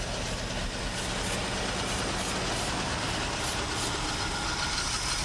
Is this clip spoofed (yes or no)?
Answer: no